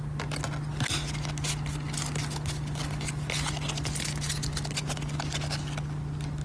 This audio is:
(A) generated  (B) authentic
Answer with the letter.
B